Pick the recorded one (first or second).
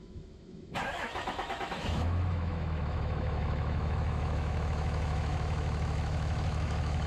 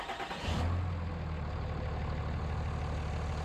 second